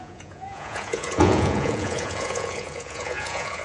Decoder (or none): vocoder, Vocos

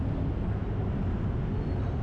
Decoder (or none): none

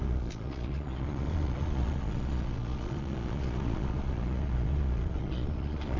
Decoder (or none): vocoder, Vocos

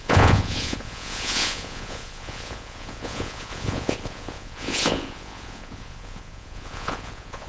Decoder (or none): vocoder, Vocos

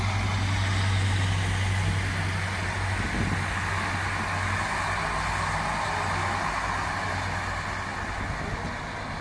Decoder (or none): none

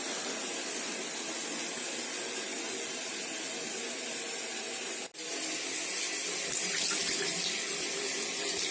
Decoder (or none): none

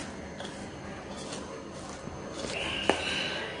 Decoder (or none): none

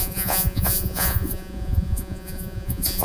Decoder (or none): vocoder, Vocos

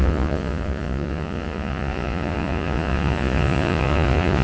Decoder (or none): vocoder, Vocos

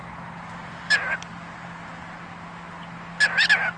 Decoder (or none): none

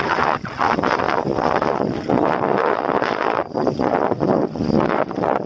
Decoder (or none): vocoder, Vocos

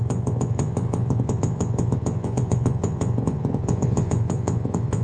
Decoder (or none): vocoder, Vocos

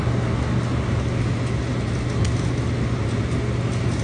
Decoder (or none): none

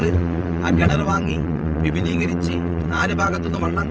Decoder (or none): vocoder, Vocos